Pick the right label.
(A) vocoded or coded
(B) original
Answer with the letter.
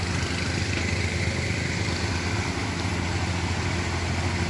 B